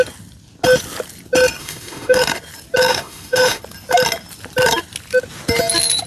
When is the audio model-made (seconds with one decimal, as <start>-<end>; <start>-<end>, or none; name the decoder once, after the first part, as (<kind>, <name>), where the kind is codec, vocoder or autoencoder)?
1.6-2.2 (autoencoder, DAC-VAE); 2.9-3.6